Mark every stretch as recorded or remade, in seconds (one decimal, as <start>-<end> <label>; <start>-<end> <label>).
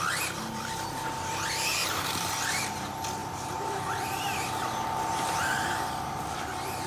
0.0-1.8 recorded; 1.8-2.6 remade; 2.6-3.2 recorded; 3.2-5.8 remade; 5.8-6.9 recorded